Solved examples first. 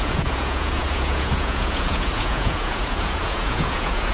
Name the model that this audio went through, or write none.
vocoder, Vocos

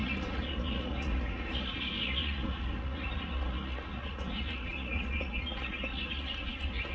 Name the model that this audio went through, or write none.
vocoder, Vocos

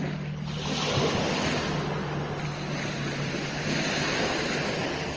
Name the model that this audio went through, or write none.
none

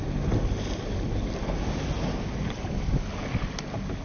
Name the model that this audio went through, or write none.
none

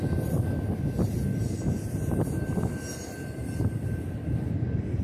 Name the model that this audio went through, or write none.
none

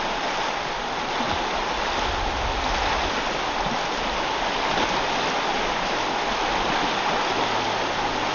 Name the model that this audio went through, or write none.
none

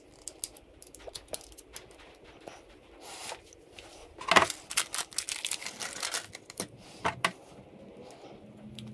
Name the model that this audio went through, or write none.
none